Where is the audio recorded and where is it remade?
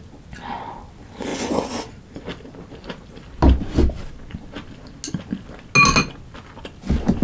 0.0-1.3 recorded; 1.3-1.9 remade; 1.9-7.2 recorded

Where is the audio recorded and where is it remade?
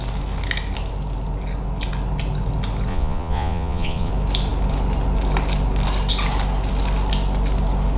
0.0-2.9 recorded; 2.9-4.1 remade; 4.1-8.0 recorded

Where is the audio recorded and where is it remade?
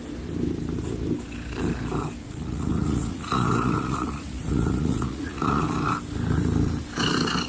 0.0-2.2 recorded; 2.2-5.6 remade; 5.6-7.5 recorded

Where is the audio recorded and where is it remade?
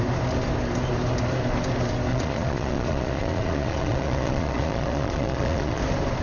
0.0-2.1 recorded; 2.1-5.8 remade; 5.8-6.2 recorded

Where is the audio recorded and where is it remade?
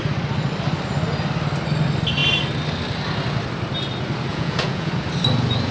0.0-4.3 recorded; 4.3-4.9 remade; 4.9-5.7 recorded